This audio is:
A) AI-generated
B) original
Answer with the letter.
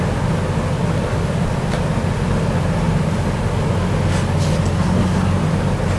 B